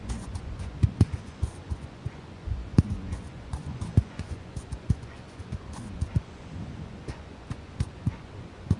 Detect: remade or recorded remade